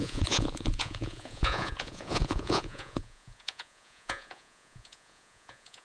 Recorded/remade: remade